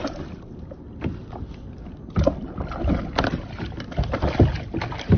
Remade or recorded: recorded